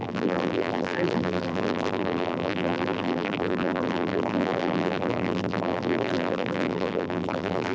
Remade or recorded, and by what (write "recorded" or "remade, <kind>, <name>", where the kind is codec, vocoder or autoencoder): remade, vocoder, BigVGAN v2